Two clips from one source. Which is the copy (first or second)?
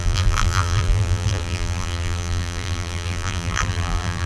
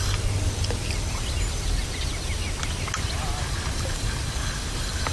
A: first